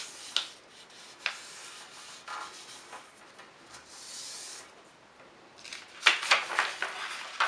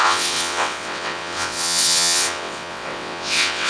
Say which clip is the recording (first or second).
first